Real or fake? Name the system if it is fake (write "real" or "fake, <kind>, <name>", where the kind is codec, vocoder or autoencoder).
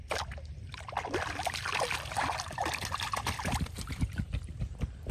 real